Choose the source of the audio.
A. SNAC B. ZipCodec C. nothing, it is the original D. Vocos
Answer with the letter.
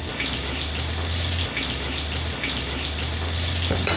C